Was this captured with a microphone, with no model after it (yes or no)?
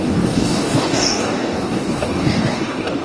no